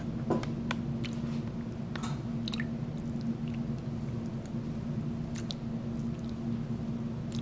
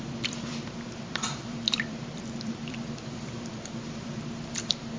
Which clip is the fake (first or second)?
second